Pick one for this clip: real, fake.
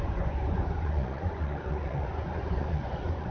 fake